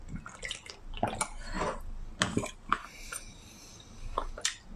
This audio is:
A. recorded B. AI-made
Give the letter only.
A